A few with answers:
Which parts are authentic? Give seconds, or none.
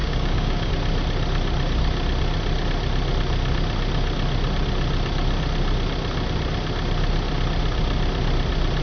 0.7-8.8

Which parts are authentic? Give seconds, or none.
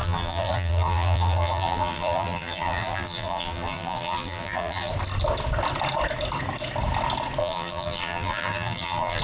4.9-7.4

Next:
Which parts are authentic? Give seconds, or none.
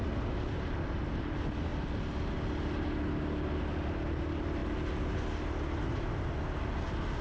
0.0-7.2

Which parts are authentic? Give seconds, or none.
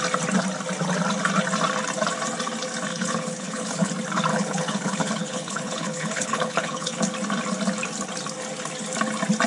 0.0-2.9; 3.9-4.3; 7.0-9.5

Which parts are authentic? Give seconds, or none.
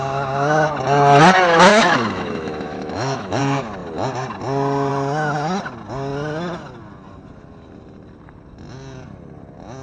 0.0-1.7; 3.4-9.8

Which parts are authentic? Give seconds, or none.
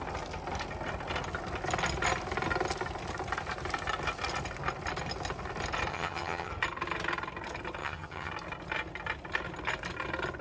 0.0-5.9; 6.5-7.8; 8.3-10.4